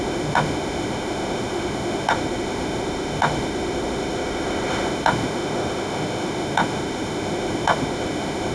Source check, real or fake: fake